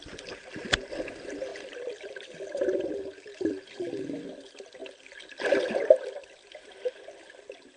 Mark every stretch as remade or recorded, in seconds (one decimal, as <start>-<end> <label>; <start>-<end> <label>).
0.0-7.8 recorded